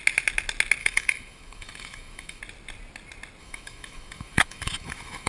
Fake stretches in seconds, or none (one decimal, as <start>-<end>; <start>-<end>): 0.8-2.4; 3.4-5.3